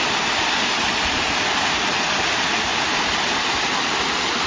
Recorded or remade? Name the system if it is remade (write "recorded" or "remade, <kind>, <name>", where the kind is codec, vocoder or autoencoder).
recorded